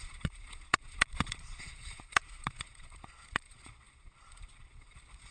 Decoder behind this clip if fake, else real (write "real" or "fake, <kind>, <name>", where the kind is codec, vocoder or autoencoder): fake, vocoder, Vocos